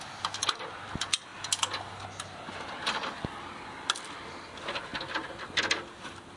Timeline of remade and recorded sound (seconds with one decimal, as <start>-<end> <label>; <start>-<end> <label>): 0.0-6.4 recorded